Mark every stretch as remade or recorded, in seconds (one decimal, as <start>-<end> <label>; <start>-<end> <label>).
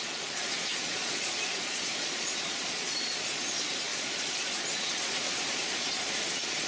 0.0-6.7 remade